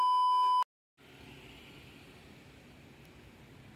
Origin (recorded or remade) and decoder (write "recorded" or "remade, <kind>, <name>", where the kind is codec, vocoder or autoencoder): recorded